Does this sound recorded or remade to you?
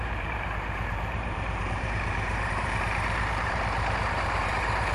remade